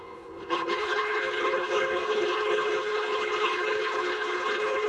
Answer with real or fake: fake